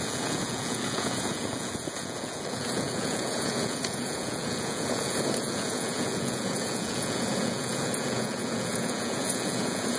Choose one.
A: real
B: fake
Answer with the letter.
B